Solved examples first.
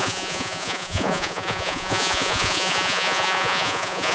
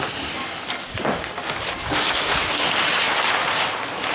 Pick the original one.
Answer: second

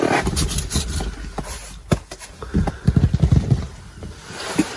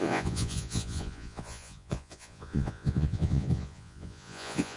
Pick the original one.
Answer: first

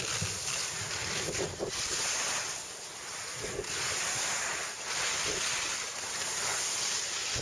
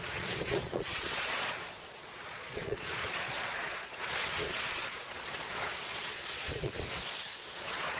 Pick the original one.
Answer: first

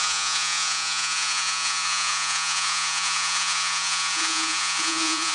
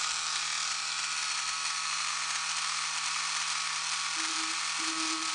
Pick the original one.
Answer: second